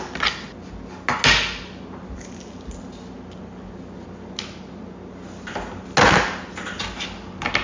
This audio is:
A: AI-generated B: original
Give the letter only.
B